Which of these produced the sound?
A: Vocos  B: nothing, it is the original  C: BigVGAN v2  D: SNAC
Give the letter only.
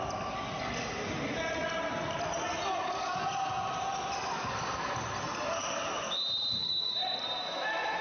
B